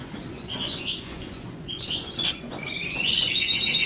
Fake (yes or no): yes